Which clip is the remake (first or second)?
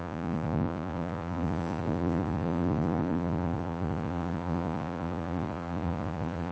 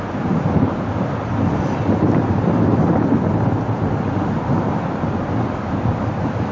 first